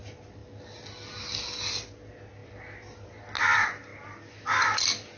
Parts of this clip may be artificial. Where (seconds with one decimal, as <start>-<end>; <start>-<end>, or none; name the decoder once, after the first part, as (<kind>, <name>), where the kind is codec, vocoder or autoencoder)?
none